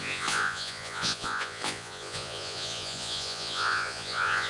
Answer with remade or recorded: remade